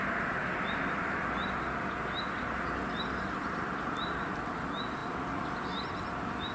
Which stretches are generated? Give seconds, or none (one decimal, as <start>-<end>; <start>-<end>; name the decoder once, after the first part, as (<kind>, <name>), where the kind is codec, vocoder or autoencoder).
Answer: 0.4-4.3 (vocoder, BigVGAN v2)

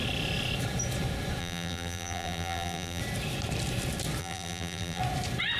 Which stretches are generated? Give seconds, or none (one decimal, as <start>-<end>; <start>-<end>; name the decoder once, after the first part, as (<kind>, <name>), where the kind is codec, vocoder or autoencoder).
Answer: 1.4-3.0 (vocoder, BigVGAN v2); 4.2-5.0

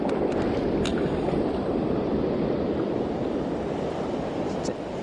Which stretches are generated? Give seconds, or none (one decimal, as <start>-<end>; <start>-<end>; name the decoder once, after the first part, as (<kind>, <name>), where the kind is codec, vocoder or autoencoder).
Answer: 0.9-2.9 (vocoder, BigVGAN v2)